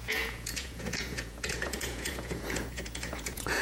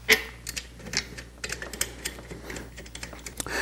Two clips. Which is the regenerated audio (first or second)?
first